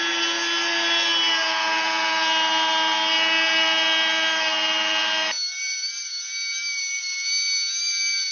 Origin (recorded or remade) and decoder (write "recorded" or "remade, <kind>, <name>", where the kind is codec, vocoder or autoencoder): recorded